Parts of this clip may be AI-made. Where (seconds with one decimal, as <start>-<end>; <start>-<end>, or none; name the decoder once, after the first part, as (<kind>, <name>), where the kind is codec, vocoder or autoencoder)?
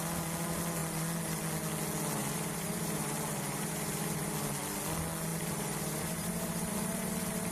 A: 2.2-4.3 (vocoder, BigVGAN v2); 5.3-7.5